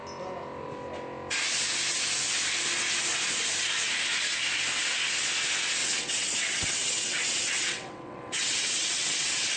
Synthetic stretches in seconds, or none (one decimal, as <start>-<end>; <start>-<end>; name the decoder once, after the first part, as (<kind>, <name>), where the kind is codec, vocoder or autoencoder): 5.8-9.6 (vocoder, WaveNeXt)